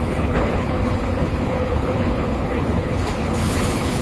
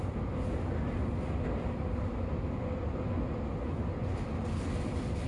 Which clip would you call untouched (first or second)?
second